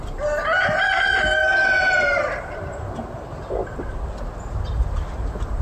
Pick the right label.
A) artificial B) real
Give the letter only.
B